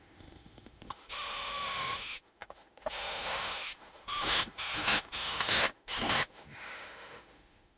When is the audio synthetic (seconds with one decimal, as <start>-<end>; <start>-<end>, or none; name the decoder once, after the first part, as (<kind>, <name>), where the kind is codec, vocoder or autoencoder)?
0.0-7.8 (autoencoder, DAC-VAE)